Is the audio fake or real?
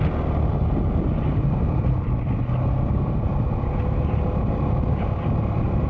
real